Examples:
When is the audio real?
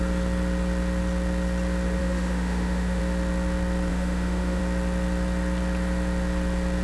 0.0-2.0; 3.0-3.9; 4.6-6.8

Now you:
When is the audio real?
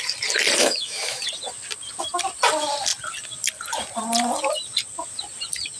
0.0-0.6; 1.2-5.8